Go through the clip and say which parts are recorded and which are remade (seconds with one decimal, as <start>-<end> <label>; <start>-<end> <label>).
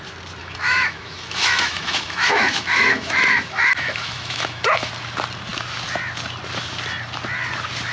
0.0-0.4 recorded; 0.4-4.9 remade; 4.9-7.9 recorded